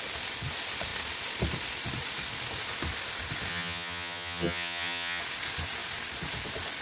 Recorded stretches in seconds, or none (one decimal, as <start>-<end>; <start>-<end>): 0.0-3.5; 5.2-6.8